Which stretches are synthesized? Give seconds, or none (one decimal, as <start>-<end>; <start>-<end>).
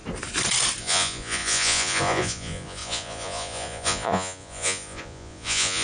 0.8-5.8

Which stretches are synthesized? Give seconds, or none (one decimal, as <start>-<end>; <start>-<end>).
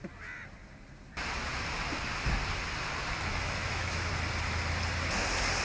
3.3-4.1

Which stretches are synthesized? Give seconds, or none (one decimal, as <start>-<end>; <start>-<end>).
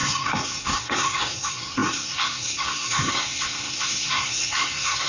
0.0-5.1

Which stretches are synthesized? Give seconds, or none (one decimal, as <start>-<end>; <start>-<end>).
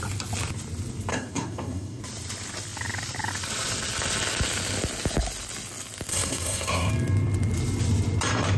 1.1-2.0; 6.1-6.9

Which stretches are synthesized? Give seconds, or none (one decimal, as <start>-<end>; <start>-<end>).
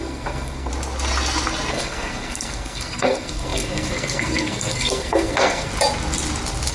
0.0-0.7; 1.7-5.7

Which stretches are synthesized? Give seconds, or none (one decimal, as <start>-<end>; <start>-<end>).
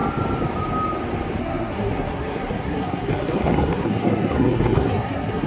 1.4-5.5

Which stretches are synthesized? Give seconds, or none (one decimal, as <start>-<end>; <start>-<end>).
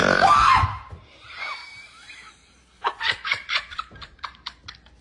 1.6-4.6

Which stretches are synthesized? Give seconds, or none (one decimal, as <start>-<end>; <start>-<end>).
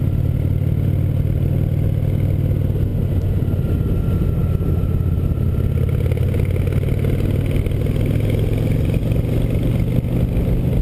none